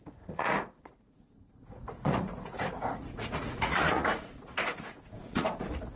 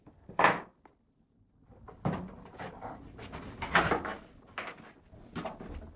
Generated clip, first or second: first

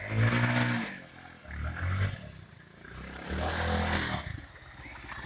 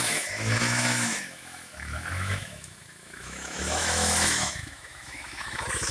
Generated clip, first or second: second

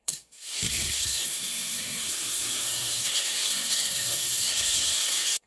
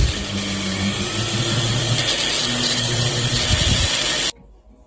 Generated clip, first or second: first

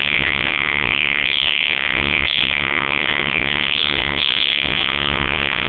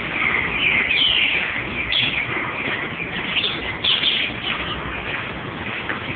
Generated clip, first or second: first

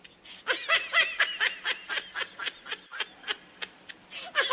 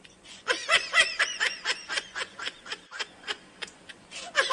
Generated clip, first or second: second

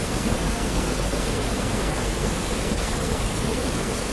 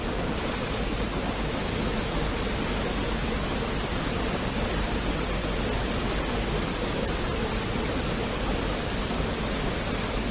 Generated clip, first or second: first